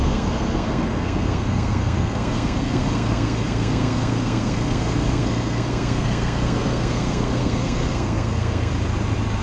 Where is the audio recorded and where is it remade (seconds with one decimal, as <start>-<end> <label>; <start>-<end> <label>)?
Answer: 0.0-8.7 remade; 8.7-9.4 recorded